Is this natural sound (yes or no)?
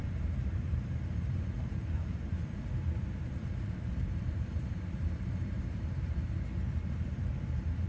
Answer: no